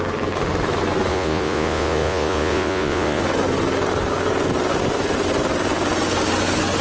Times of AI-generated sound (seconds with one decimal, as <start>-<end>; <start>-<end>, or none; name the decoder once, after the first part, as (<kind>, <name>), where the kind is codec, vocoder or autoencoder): 1.1-3.2 (vocoder, Vocos)